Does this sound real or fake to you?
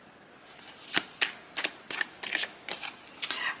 real